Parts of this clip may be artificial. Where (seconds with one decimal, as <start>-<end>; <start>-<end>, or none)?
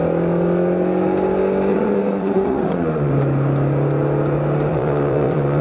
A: 1.7-3.1; 4.7-5.6